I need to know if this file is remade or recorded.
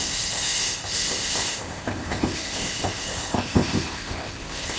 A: remade